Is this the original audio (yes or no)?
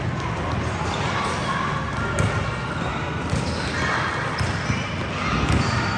yes